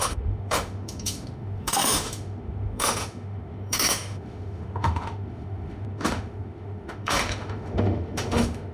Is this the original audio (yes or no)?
no